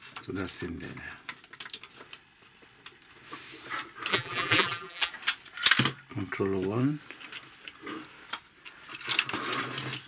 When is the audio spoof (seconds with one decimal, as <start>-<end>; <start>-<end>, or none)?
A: 4.1-5.1